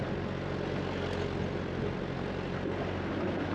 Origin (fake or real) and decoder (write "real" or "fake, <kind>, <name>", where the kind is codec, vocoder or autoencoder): real